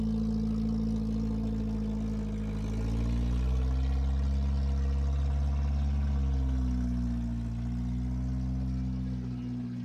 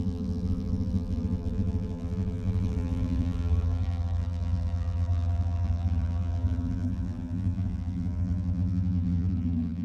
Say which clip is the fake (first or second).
second